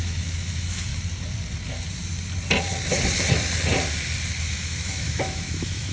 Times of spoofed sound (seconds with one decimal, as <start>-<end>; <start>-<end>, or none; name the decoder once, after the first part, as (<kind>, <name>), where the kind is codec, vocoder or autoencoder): 0.0-0.9 (autoencoder, DAC-VAE); 4.4-5.9